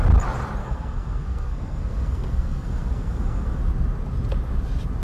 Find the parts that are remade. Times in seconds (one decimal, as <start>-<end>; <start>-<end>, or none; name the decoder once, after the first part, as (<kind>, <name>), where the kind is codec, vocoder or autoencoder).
0.6-3.6 (codec, SNAC)